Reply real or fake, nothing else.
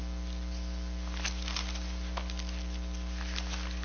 real